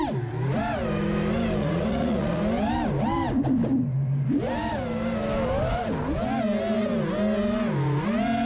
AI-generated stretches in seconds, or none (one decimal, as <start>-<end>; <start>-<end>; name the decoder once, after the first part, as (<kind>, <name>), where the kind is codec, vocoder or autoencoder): 1.6-2.4 (vocoder, Vocos)

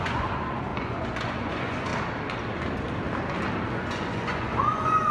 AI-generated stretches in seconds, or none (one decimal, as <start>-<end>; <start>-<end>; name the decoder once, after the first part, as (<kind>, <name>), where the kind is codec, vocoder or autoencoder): 0.0-1.9 (vocoder, Vocos); 3.7-5.1